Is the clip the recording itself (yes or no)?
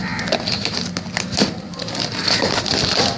yes